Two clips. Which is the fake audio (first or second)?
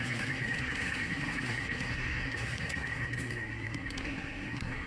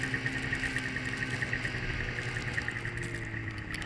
first